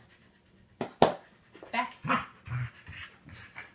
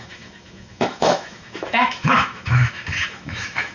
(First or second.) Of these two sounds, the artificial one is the second